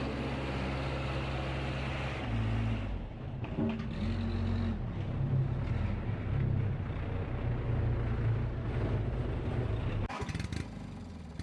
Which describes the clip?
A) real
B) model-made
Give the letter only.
A